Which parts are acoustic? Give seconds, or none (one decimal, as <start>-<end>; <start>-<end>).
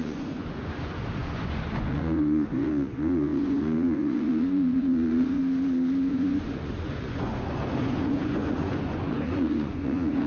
5.4-6.1